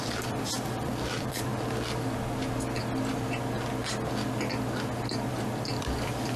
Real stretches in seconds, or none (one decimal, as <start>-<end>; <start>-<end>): 1.5-5.3